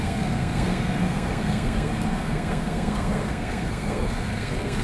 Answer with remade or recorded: remade